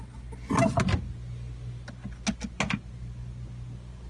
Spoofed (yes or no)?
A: no